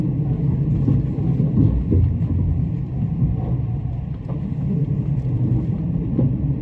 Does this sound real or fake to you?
real